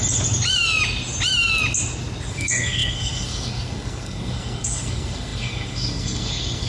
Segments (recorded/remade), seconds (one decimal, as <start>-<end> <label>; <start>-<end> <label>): 0.0-2.3 recorded; 2.3-6.7 remade